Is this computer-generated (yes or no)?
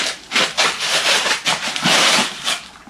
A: yes